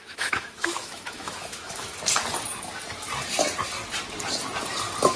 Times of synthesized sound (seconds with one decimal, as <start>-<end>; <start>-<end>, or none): 0.0-1.9